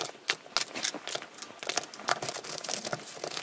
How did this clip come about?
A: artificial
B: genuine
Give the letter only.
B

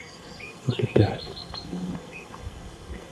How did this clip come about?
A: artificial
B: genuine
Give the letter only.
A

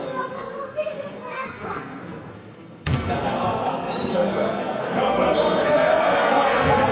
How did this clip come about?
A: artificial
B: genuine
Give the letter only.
A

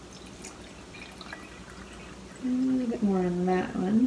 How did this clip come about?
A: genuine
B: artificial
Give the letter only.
A